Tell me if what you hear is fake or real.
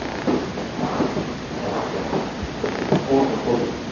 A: real